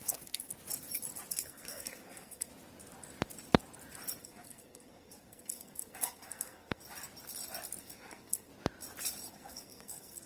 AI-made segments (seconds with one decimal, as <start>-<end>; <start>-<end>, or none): 0.0-0.5; 1.3-2.5; 4.2-6.8; 7.8-8.5; 9.3-10.3